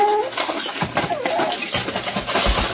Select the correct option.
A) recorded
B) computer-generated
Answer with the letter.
A